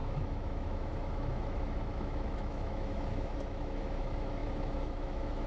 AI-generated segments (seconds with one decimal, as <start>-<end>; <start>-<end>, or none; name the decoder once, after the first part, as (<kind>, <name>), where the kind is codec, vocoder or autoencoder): 0.0-5.5 (autoencoder, DAC-VAE)